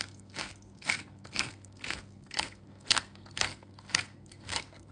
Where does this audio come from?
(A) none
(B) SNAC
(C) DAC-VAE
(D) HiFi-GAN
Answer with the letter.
B